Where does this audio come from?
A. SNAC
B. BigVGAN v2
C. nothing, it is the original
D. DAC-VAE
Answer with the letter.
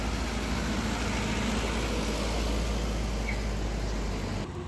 C